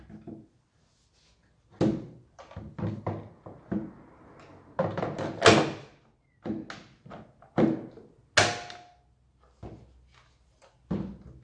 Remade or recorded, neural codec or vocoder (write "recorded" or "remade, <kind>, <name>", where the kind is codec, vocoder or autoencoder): recorded